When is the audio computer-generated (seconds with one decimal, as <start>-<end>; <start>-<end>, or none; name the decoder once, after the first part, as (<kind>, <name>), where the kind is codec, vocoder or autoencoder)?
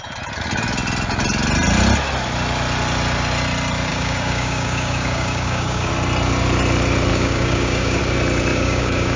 3.9-5.9 (codec, DAC); 7.1-8.0; 8.5-9.2